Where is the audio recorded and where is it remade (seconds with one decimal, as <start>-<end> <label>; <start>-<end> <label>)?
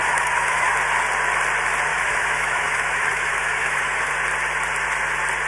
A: 0.0-0.7 remade; 0.7-1.9 recorded; 1.9-4.1 remade; 4.1-5.5 recorded